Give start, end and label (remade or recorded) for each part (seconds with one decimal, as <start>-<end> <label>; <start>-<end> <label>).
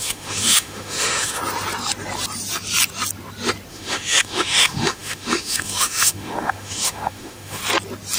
0.0-1.4 remade; 1.4-3.7 recorded; 3.7-7.6 remade; 7.6-8.2 recorded